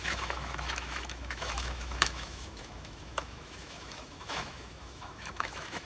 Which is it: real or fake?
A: fake